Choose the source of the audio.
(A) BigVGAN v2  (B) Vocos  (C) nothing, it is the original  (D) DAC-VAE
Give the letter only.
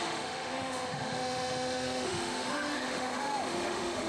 D